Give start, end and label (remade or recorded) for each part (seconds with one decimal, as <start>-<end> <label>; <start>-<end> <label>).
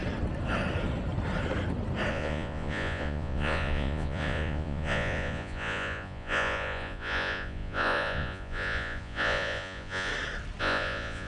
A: 0.0-2.1 recorded; 2.1-10.1 remade; 10.1-10.6 recorded; 10.6-11.3 remade